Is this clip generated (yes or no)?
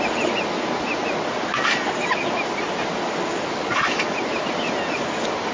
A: no